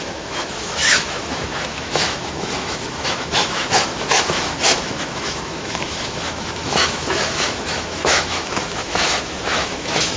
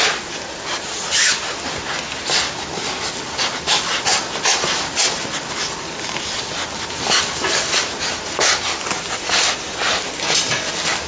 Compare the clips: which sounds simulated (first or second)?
first